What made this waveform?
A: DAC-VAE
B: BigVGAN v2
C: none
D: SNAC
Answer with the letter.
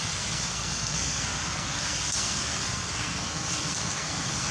D